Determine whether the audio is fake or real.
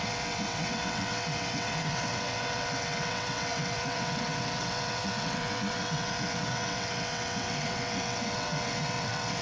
fake